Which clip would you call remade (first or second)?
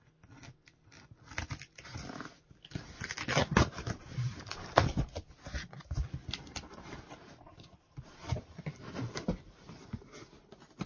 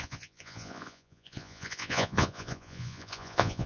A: second